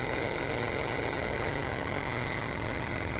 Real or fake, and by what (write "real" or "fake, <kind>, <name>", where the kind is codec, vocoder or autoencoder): fake, vocoder, HiFi-GAN